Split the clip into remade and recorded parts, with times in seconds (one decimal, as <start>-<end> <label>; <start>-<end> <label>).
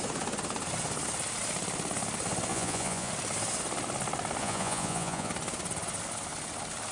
0.0-2.5 recorded; 2.5-3.1 remade; 3.1-4.4 recorded; 4.4-5.3 remade; 5.3-6.9 recorded